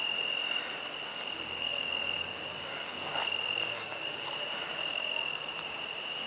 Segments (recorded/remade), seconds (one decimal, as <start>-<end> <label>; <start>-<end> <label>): 0.0-1.1 recorded; 1.1-4.3 remade; 4.3-4.9 recorded; 4.9-5.5 remade; 5.5-6.3 recorded